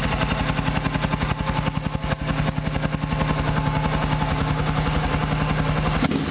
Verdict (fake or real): real